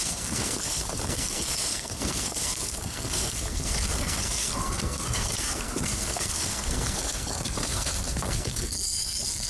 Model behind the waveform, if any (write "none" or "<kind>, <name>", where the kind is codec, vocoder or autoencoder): codec, SNAC